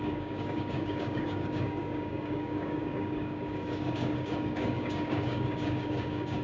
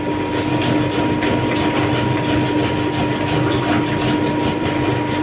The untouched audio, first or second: second